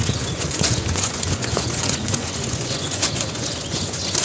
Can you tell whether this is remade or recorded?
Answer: remade